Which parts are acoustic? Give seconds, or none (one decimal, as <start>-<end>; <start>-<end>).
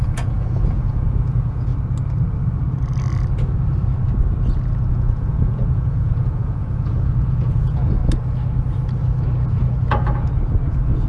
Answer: 1.7-4.9; 8.0-10.7